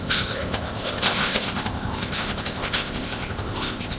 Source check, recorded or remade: remade